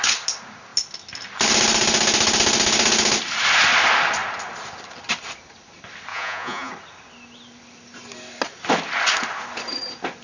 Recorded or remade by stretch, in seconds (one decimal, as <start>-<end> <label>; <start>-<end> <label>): 0.0-6.1 recorded; 6.1-6.7 remade; 6.7-10.2 recorded